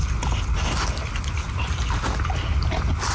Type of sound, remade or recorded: recorded